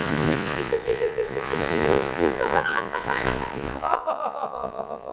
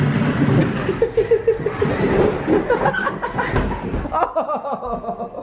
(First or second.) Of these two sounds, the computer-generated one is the first